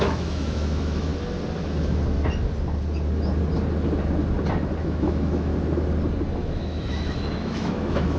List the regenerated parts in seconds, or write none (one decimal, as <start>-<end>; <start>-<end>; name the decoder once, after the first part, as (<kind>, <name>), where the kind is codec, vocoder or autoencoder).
0.0-1.1 (autoencoder, DAC-VAE); 4.8-5.5; 6.4-8.2